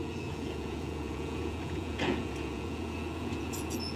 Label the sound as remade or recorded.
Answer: remade